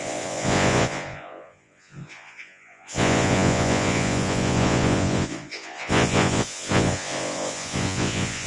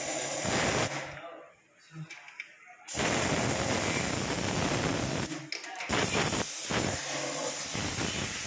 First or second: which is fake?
first